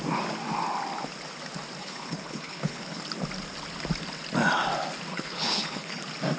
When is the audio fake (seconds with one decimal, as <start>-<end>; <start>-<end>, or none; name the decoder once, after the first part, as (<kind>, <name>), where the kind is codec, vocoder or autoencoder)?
1.8-3.0 (codec, HILCodec); 5.1-6.0